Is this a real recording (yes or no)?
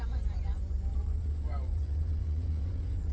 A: no